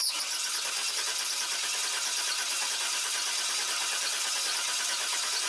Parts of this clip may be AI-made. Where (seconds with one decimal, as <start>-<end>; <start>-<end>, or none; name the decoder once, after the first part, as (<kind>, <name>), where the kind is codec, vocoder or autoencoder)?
none